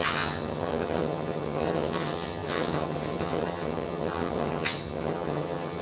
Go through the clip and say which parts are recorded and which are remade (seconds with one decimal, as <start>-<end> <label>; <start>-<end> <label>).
0.0-5.8 remade